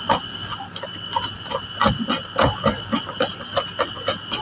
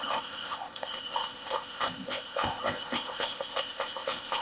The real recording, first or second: first